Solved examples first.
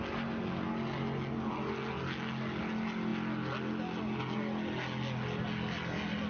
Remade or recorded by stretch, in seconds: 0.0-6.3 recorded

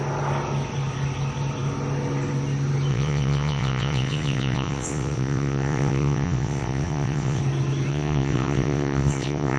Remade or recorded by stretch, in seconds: 0.0-2.9 recorded; 2.9-7.4 remade; 7.4-7.9 recorded; 7.9-9.6 remade

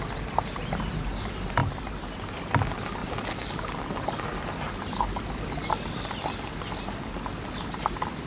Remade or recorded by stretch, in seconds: 0.0-8.3 recorded

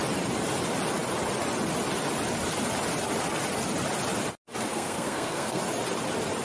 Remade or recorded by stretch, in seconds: 0.0-4.7 recorded; 4.7-5.6 remade; 5.6-6.4 recorded

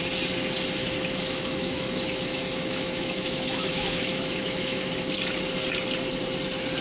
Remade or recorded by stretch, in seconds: 0.0-0.8 recorded; 0.8-4.9 remade; 4.9-6.8 recorded

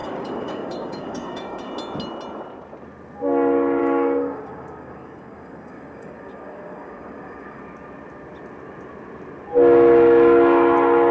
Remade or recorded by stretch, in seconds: 0.0-1.7 remade; 1.7-3.8 recorded; 3.8-7.6 remade; 7.6-11.1 recorded